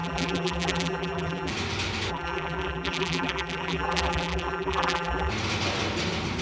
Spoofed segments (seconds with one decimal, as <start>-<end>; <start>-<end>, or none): 0.0-1.5; 2.1-5.3